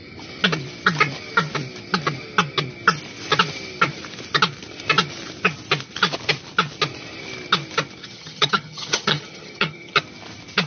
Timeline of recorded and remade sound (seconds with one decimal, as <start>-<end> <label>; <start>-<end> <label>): 0.0-8.0 recorded; 8.0-10.0 remade; 10.0-10.7 recorded